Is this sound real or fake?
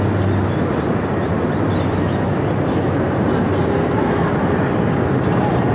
real